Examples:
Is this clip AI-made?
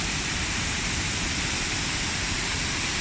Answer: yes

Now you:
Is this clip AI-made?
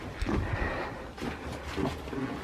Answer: yes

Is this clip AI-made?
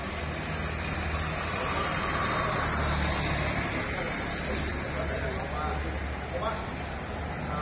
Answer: no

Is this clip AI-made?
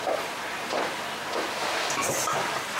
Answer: no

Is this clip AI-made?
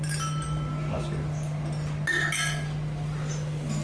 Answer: no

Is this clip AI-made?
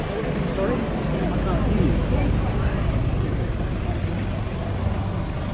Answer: no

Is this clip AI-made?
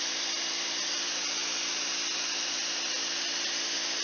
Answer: yes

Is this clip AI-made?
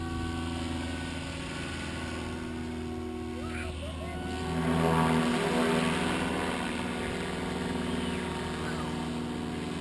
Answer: no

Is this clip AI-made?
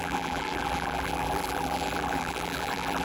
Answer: yes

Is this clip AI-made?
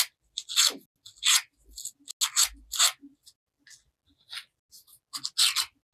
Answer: no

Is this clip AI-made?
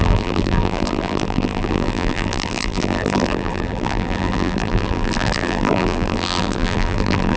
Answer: yes